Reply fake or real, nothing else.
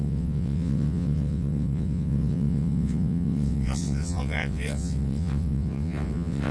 fake